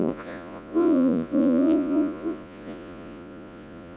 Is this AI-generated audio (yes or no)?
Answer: yes